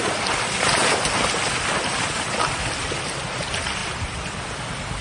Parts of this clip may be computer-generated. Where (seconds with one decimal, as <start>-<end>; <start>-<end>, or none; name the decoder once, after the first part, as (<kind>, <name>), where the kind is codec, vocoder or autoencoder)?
0.0-0.8 (vocoder, BigVGAN v2); 1.6-3.8; 4.6-5.0